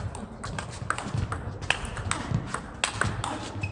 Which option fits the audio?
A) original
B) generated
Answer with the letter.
A